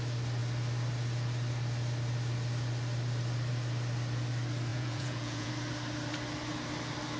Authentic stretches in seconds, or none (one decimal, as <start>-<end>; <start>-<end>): 0.0-4.7; 5.5-7.2